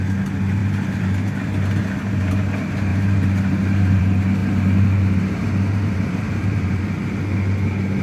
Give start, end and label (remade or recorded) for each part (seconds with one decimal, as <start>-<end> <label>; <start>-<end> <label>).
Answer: 0.0-0.6 recorded; 0.6-2.3 remade; 2.3-2.9 recorded; 2.9-4.0 remade; 4.0-4.4 recorded; 4.4-6.8 remade; 6.8-8.0 recorded